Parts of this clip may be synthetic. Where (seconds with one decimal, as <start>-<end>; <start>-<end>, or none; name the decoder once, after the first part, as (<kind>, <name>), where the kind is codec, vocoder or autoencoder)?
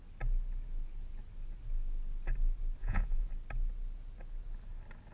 2.8-3.3 (vocoder, Vocos)